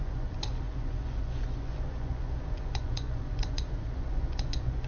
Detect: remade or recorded remade